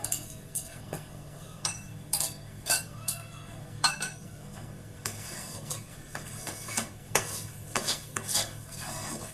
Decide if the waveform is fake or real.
fake